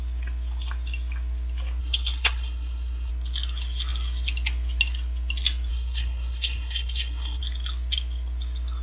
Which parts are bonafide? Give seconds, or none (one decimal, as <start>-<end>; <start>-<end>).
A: 0.0-1.8; 3.1-5.7; 7.4-8.8